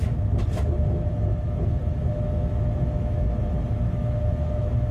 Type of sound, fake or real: fake